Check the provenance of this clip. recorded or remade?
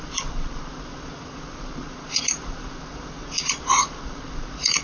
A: remade